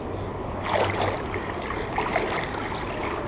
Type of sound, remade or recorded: recorded